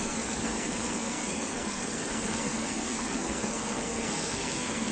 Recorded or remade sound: remade